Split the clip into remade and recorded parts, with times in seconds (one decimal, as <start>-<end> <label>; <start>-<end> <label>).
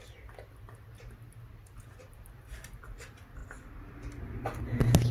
0.0-5.1 recorded